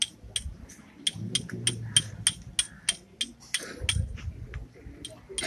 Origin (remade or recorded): recorded